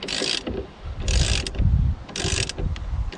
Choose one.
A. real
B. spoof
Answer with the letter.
A